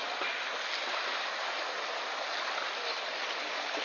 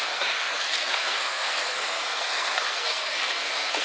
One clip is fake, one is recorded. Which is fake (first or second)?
second